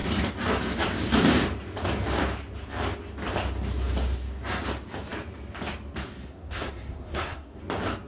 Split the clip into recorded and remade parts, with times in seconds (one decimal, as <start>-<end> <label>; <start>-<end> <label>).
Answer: 0.0-6.2 recorded; 6.2-7.6 remade; 7.6-8.1 recorded